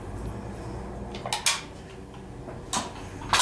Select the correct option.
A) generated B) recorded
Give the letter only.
B